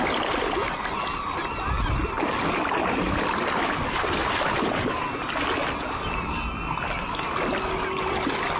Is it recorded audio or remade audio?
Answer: recorded